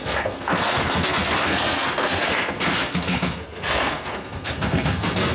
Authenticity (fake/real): fake